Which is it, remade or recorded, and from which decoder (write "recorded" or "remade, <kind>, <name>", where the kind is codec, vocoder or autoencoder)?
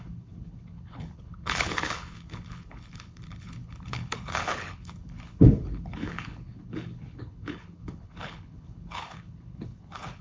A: remade, codec, HILCodec